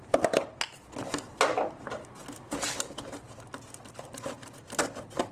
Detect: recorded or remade recorded